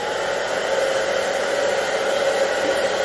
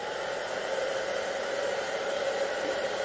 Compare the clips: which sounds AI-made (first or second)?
second